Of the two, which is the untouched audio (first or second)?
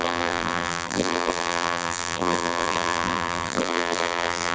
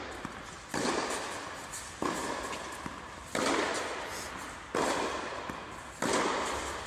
second